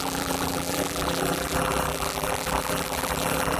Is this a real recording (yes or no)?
no